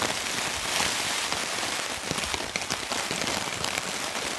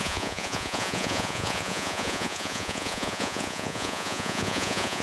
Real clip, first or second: first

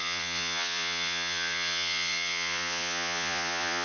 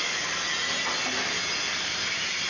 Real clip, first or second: second